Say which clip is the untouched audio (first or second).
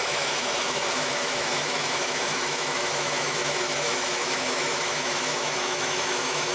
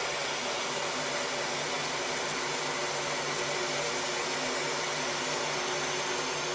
second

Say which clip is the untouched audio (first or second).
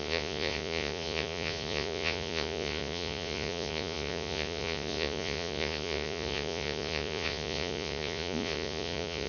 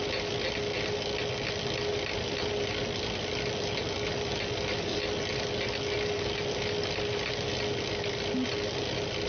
second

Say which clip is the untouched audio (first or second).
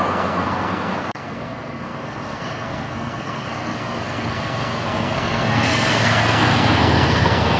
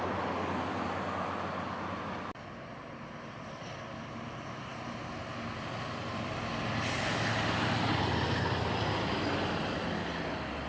second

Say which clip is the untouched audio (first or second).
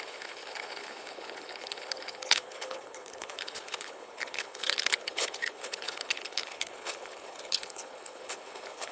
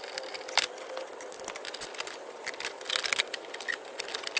second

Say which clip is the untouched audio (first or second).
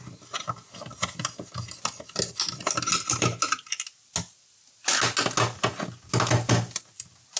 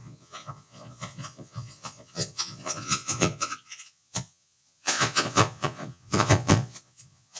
first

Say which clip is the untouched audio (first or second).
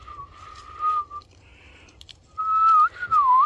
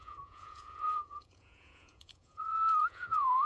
first